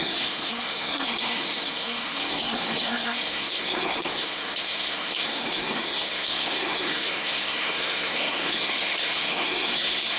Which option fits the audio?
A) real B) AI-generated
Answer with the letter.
B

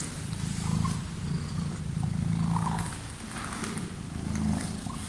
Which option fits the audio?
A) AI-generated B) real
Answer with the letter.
A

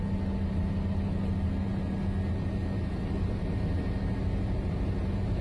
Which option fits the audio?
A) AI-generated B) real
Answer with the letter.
B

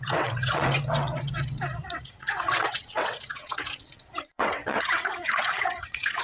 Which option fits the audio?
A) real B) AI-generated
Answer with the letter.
B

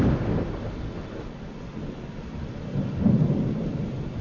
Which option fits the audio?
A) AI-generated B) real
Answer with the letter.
B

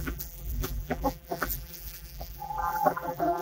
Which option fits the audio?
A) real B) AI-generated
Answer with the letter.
B